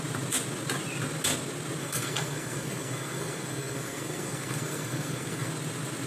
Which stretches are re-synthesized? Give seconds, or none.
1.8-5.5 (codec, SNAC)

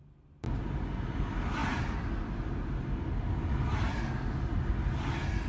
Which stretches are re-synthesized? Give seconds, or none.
none

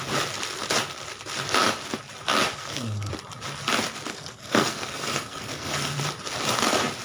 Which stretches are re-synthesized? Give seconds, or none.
2.5-3.1 (codec, SNAC); 4.1-6.0